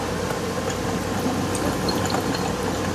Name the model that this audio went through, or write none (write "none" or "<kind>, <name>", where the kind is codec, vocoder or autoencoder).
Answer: none